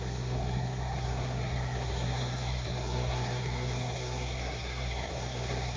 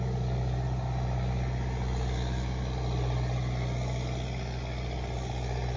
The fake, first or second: first